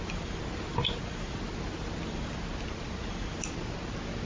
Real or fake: real